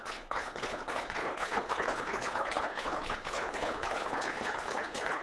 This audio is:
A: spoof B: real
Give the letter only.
A